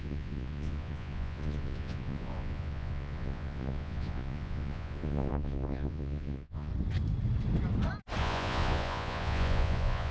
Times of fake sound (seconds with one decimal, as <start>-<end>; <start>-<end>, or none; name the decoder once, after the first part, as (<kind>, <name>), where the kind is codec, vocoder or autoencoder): 0.0-6.7 (vocoder, Vocos); 8.2-10.1